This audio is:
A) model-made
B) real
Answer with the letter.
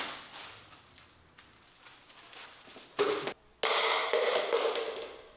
B